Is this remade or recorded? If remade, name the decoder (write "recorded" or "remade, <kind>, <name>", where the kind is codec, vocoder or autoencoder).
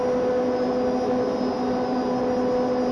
recorded